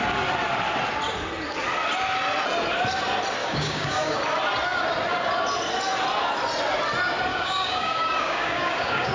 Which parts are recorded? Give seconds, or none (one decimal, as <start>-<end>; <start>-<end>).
0.0-3.4; 4.2-7.3